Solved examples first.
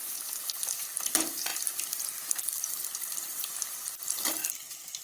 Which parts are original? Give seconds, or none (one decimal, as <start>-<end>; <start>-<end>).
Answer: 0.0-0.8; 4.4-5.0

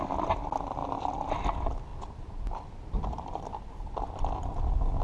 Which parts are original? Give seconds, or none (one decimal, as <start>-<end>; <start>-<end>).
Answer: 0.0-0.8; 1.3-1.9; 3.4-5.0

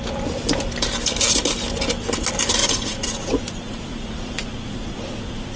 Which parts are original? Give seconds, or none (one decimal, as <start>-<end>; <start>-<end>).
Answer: 0.0-2.6

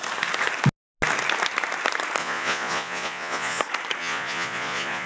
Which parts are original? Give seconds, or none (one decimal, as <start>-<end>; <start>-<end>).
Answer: 0.0-2.2; 3.6-4.0

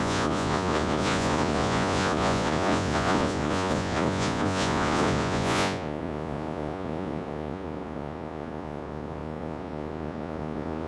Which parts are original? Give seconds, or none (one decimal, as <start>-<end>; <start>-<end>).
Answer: none

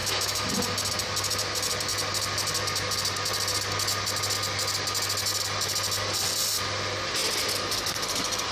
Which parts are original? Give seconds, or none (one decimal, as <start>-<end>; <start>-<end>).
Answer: 0.5-8.5